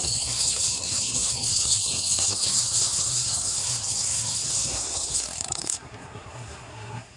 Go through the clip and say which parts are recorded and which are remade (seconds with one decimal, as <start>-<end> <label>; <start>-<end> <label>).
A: 0.0-7.2 remade